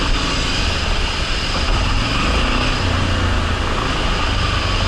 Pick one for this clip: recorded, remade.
recorded